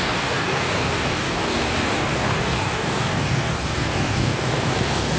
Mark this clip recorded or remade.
remade